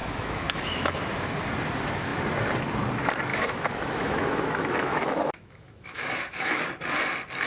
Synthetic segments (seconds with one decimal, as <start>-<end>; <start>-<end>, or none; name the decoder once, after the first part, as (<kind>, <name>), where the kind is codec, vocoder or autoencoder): 0.0-1.0 (autoencoder, DAC-VAE); 3.3-6.6